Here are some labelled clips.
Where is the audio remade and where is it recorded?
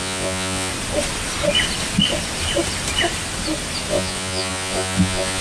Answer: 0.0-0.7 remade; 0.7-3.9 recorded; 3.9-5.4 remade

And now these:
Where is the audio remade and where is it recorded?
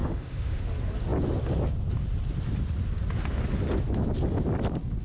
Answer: 0.0-0.6 remade; 0.6-5.0 recorded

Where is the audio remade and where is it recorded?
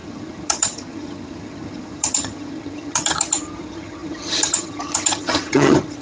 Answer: 0.0-6.0 remade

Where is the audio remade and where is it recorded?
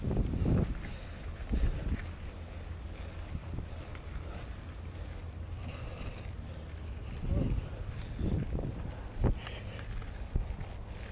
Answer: 0.0-11.1 recorded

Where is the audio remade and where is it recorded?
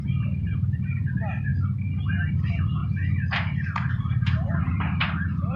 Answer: 0.0-1.5 remade; 1.5-2.3 recorded; 2.3-2.8 remade; 2.8-3.9 recorded; 3.9-5.6 remade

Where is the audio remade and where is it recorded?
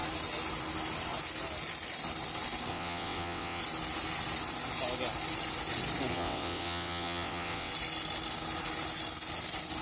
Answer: 0.0-2.7 recorded; 2.7-3.6 remade; 3.6-6.1 recorded; 6.1-7.7 remade; 7.7-9.8 recorded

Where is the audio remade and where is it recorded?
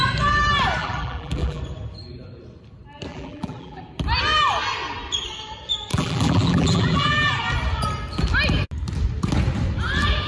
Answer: 0.0-0.8 recorded; 0.8-1.6 remade; 1.6-3.1 recorded; 3.1-3.8 remade; 3.8-5.9 recorded; 5.9-7.3 remade; 7.3-10.3 recorded